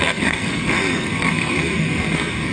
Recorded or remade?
remade